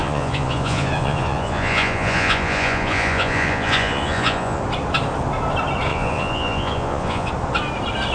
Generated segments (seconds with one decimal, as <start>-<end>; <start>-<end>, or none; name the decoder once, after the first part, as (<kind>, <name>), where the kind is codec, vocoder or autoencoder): 0.0-4.6 (vocoder, Vocos); 5.9-7.3